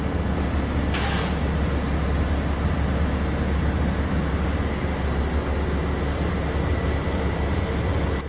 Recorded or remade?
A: recorded